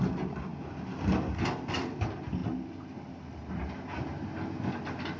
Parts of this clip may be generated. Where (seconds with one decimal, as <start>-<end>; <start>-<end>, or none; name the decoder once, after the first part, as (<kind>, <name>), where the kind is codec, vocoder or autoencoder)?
none